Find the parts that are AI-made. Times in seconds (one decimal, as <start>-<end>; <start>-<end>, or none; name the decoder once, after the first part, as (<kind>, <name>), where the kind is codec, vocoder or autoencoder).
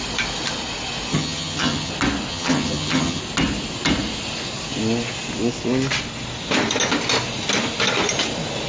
1.1-1.9 (vocoder, HiFi-GAN); 2.3-3.2